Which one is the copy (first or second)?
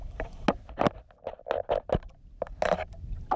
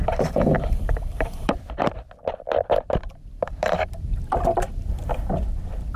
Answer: second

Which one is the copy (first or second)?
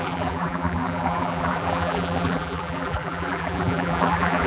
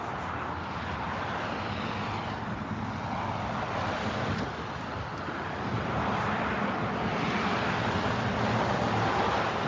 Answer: first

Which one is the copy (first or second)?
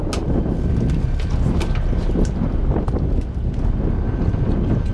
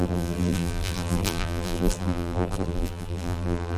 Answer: second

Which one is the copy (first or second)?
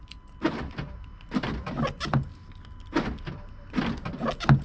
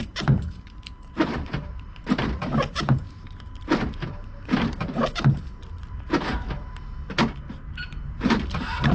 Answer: second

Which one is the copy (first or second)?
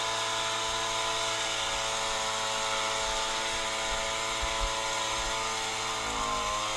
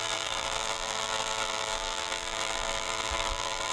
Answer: second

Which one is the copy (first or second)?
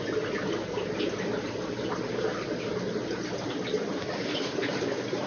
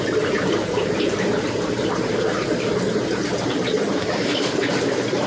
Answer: second